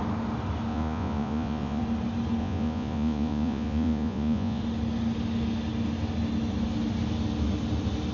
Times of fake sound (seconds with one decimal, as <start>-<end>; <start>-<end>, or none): 0.7-1.8; 2.4-4.6